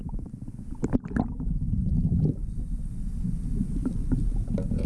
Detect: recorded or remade recorded